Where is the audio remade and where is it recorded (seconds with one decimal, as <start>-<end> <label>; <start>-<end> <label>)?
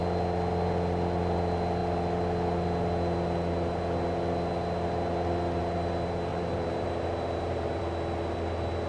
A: 0.0-6.3 recorded; 6.3-7.8 remade; 7.8-8.9 recorded